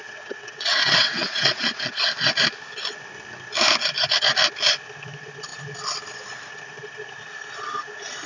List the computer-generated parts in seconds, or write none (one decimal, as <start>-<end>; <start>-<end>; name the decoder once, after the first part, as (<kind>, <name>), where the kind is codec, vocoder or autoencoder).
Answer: 0.0-2.0 (vocoder, WaveNeXt)